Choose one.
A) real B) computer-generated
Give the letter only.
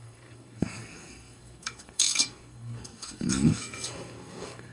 B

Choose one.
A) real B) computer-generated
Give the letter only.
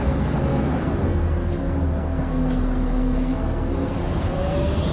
B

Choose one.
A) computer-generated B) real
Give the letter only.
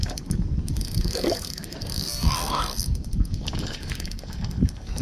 A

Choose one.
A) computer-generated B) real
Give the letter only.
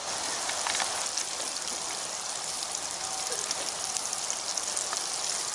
B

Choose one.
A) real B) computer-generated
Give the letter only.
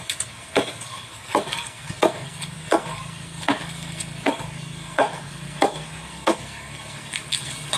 B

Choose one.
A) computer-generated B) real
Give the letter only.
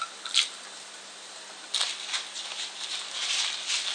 B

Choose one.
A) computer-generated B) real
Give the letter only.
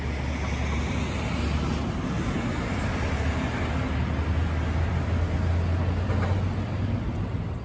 B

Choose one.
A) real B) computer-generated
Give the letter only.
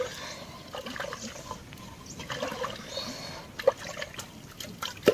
A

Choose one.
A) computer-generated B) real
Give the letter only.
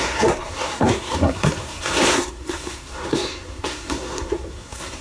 A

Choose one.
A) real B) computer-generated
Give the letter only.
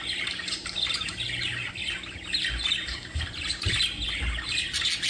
A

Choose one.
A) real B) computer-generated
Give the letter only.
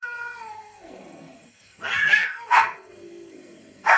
B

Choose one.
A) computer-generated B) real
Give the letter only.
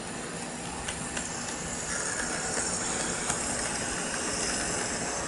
B